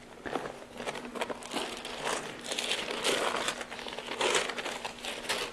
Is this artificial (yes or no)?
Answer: no